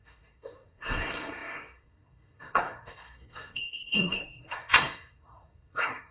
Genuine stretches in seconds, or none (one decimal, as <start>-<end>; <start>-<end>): none